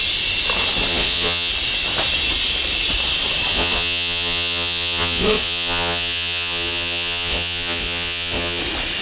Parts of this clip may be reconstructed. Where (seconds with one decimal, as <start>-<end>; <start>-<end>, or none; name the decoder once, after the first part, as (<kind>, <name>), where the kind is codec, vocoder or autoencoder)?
0.9-1.5 (vocoder, Vocos); 3.5-8.6